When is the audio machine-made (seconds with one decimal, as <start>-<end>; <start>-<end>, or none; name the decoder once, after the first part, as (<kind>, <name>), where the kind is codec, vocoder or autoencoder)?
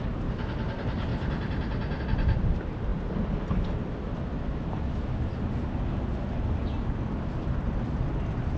none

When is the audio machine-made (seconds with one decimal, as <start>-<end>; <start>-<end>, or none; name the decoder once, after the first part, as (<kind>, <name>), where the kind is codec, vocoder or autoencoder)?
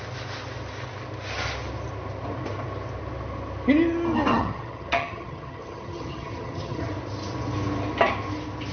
4.3-6.9 (vocoder, HiFi-GAN)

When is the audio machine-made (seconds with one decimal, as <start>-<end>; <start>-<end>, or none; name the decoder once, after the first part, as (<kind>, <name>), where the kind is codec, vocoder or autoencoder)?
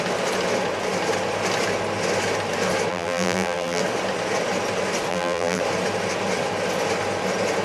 2.9-3.8 (vocoder, BigVGAN v2); 5.1-5.6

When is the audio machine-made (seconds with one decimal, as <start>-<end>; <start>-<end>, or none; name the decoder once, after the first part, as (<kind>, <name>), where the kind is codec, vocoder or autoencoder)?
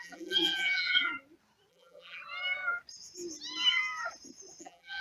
0.0-1.1 (vocoder, BigVGAN v2); 1.7-2.2; 4.6-5.0